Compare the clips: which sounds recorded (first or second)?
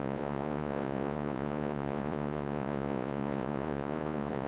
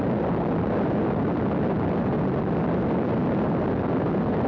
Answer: second